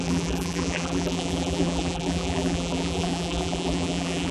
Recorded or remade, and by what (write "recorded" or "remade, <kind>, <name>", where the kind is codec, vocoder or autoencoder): remade, vocoder, BigVGAN v2